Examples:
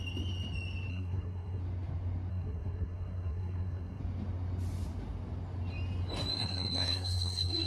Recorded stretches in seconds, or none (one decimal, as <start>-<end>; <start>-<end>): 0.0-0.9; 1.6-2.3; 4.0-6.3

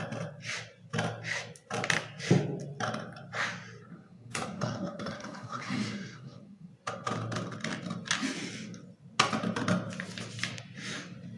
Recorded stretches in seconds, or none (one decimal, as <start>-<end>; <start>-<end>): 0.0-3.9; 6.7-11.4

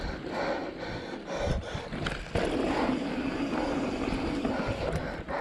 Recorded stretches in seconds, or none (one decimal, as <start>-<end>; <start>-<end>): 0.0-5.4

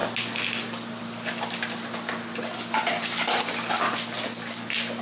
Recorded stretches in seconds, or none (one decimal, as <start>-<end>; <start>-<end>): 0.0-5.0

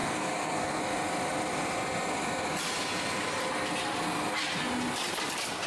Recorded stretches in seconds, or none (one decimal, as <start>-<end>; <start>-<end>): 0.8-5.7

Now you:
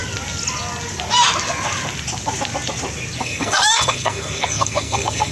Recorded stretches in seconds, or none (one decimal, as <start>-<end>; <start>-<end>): 0.0-3.2

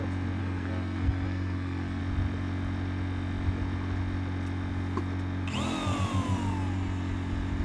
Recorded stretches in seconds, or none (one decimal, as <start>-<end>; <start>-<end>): 0.0-0.4; 2.0-7.6